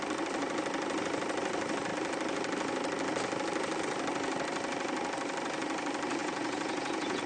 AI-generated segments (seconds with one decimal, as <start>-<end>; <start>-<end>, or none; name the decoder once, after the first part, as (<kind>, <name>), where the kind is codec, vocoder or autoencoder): 6.2-7.3 (vocoder, Vocos)